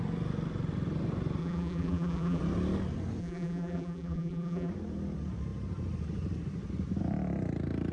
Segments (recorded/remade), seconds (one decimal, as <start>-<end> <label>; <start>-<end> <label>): 0.0-1.4 recorded; 1.4-2.4 remade; 2.4-3.2 recorded; 3.2-4.7 remade; 4.7-7.9 recorded